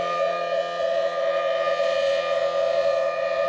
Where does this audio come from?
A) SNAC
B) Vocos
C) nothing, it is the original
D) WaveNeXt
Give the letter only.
B